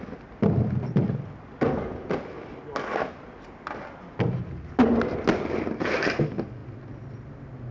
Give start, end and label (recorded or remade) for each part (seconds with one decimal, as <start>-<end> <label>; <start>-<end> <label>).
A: 0.0-7.7 recorded